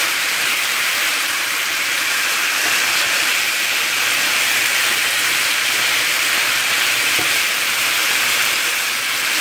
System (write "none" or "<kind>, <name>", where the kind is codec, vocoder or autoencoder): vocoder, BigVGAN v2